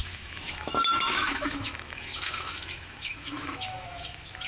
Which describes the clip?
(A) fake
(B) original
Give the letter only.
A